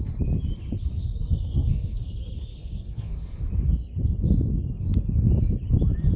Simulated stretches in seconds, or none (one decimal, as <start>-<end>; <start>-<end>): 0.9-2.1; 2.6-3.4